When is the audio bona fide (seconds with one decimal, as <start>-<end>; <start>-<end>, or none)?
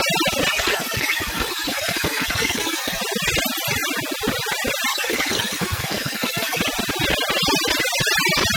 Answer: 0.0-0.5; 3.0-4.9; 6.6-8.6